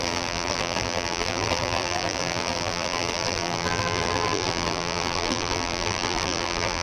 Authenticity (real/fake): fake